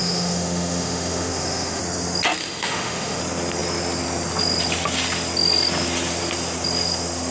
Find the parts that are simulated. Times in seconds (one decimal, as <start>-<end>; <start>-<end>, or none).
0.0-1.8; 2.4-3.2